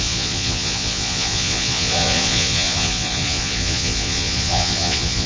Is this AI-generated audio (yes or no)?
yes